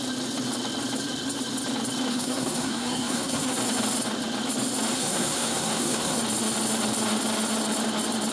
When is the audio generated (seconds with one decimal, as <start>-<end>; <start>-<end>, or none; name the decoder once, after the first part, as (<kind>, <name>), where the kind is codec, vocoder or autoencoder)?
2.1-3.6 (codec, SNAC); 4.9-6.2